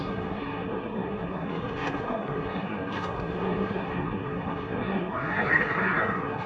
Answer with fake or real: fake